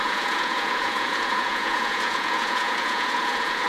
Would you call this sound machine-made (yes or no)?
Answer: yes